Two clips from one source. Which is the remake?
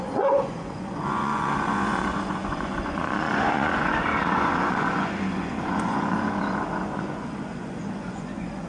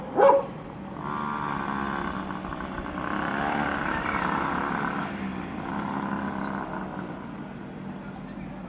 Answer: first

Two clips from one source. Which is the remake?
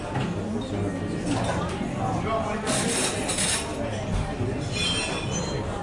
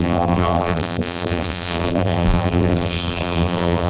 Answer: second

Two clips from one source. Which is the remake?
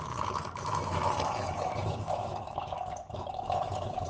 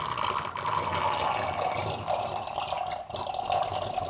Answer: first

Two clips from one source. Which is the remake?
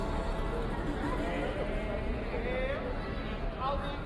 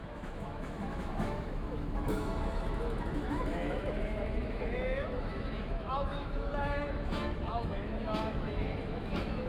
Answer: second